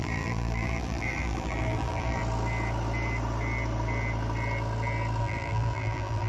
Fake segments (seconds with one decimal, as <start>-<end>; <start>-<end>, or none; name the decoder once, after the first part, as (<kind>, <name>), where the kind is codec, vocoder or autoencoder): 0.0-2.2 (vocoder, BigVGAN v2); 5.2-6.3